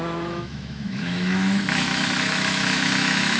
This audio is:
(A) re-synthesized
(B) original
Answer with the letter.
A